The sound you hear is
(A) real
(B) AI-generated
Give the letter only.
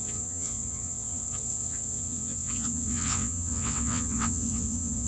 B